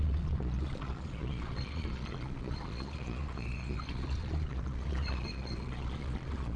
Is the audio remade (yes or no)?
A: yes